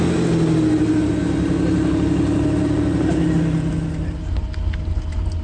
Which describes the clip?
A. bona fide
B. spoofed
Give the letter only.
A